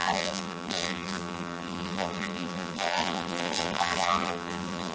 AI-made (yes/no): yes